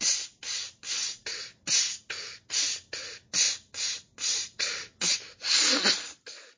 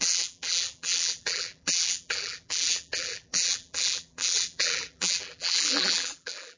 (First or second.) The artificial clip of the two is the second